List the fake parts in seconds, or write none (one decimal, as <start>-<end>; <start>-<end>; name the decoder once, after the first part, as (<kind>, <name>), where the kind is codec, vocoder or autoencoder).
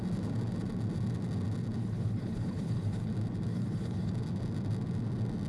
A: 1.8-3.1 (codec, HILCodec); 3.5-4.1